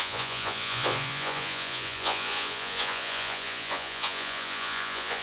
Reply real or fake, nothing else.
fake